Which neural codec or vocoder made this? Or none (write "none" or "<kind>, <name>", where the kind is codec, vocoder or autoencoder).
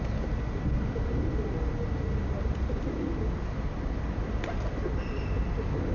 none